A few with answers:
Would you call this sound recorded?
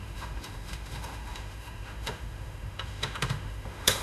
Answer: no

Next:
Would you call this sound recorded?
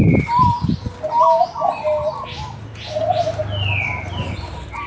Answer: yes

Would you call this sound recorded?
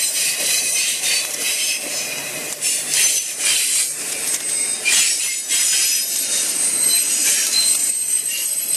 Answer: no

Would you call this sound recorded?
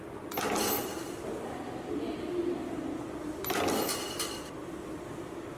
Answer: no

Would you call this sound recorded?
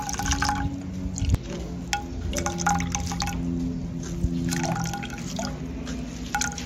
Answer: yes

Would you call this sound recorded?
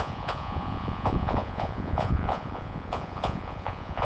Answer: no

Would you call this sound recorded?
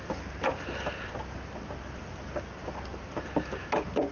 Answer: yes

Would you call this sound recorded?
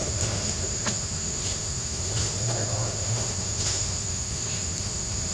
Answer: no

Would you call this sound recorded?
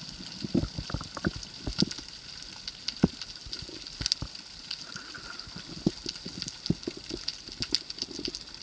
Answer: yes